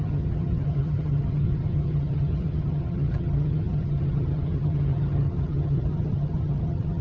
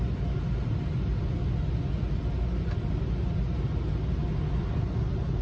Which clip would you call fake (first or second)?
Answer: first